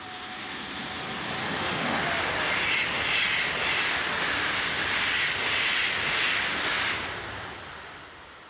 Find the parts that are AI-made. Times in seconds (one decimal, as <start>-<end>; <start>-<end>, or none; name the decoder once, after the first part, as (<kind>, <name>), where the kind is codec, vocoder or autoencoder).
1.4-2.0 (autoencoder, DAC-VAE)